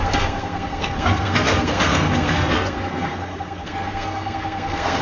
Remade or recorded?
remade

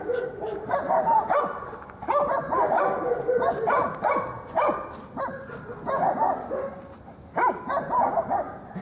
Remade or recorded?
recorded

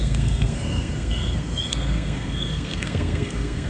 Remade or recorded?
remade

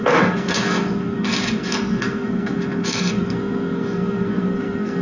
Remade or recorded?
remade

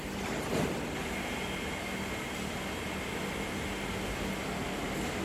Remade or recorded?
recorded